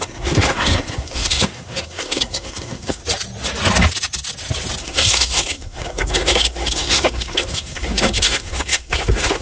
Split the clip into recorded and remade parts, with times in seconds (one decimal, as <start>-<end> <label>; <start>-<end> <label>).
0.0-3.0 remade; 3.0-4.8 recorded; 4.8-9.4 remade